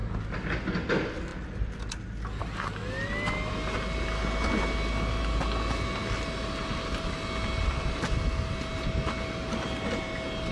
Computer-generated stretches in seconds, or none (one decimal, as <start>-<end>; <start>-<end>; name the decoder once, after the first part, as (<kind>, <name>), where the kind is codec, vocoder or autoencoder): none